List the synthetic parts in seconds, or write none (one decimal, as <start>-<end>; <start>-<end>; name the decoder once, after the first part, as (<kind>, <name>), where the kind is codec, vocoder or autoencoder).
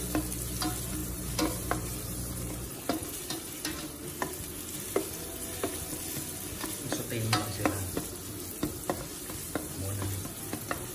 1.0-3.6 (vocoder, BigVGAN v2)